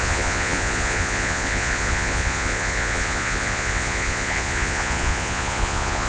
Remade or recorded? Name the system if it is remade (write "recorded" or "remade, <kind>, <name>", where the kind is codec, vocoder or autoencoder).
remade, vocoder, Vocos